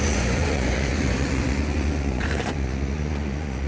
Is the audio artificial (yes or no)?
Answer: yes